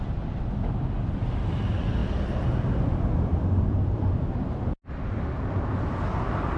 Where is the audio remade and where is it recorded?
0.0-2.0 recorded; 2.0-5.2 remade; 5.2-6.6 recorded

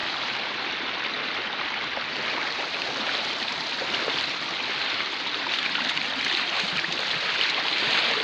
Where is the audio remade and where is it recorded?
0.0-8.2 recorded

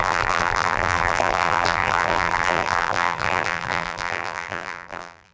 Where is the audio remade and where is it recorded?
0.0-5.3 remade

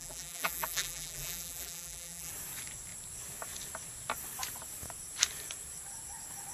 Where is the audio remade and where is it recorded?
0.0-2.3 remade; 2.3-6.5 recorded

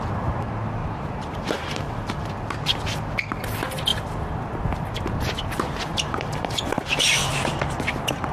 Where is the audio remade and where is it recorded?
0.0-0.8 recorded; 0.8-2.3 remade; 2.3-5.9 recorded; 5.9-7.2 remade; 7.2-8.3 recorded

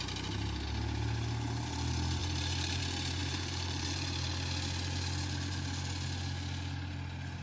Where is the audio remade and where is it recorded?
0.0-2.2 recorded; 2.2-2.8 remade; 2.8-3.2 recorded; 3.2-4.3 remade; 4.3-7.4 recorded

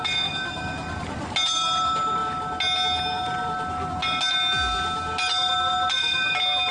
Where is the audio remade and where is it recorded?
0.0-6.7 recorded